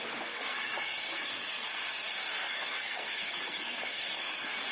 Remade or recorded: remade